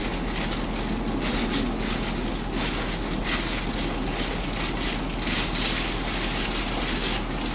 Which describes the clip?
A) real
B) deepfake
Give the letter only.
A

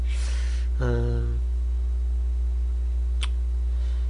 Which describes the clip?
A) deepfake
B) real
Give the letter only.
B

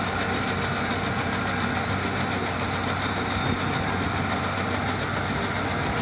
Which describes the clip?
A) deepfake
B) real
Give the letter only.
B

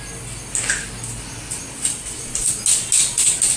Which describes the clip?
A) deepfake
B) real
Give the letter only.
B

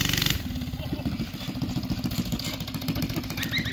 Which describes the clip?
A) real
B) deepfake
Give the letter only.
A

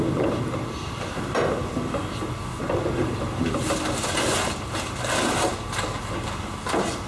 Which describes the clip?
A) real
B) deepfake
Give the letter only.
A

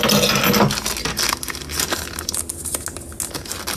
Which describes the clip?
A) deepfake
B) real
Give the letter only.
B